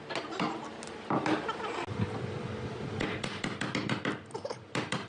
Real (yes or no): yes